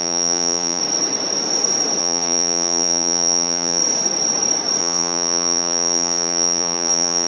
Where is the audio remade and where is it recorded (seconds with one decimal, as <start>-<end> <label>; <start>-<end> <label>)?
0.0-0.8 remade; 0.8-2.0 recorded; 2.0-3.8 remade; 3.8-4.8 recorded; 4.8-7.3 remade